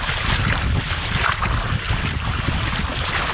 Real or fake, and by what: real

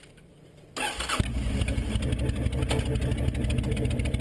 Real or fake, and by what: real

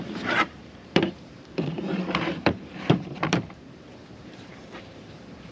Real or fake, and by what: fake, vocoder, BigVGAN v2